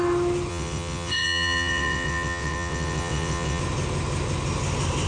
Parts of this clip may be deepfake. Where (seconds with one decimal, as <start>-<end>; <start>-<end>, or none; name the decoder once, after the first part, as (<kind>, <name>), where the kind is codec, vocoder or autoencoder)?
0.5-3.6 (vocoder, WaveNeXt)